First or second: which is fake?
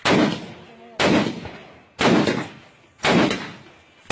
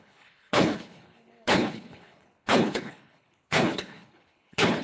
second